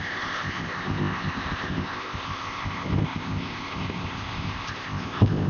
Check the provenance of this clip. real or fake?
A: fake